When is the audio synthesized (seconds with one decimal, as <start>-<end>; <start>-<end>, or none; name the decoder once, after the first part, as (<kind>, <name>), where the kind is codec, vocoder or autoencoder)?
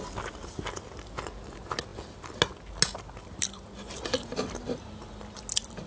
none